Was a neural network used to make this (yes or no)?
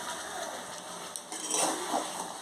no